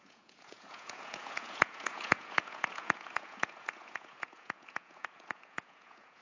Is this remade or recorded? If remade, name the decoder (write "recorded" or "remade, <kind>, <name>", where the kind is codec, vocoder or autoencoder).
remade, vocoder, Vocos